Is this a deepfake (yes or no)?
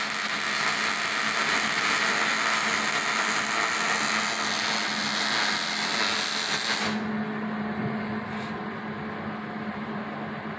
no